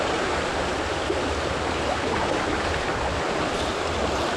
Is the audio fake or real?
real